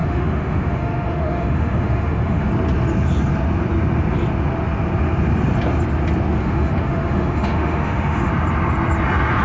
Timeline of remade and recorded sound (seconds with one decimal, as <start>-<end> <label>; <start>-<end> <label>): 0.0-2.5 remade; 2.5-6.4 recorded; 6.4-8.3 remade; 8.3-9.4 recorded